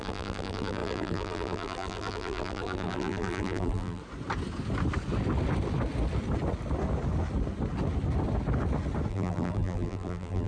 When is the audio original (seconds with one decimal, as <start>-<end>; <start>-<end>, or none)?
4.0-9.1